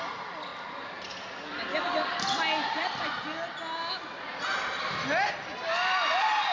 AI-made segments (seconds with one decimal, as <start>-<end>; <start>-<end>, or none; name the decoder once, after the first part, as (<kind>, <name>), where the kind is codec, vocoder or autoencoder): none